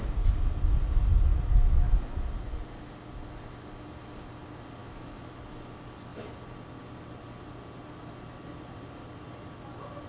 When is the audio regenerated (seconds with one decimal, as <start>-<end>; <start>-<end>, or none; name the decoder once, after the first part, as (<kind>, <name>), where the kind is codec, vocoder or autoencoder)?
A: 1.3-1.9 (autoencoder, DAC-VAE); 4.8-5.4